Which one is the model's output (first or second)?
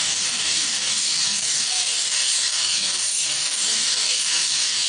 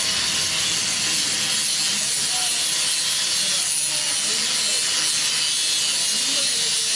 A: first